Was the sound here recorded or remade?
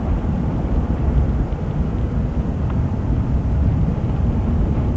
recorded